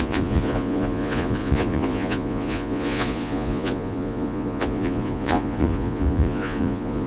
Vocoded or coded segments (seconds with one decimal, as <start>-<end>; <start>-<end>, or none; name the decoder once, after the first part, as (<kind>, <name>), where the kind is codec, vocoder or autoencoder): 0.0-7.1 (vocoder, Vocos)